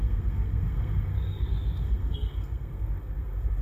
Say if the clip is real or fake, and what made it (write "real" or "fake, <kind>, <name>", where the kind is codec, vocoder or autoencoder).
fake, codec, SNAC